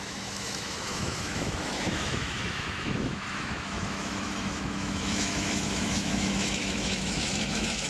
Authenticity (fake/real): fake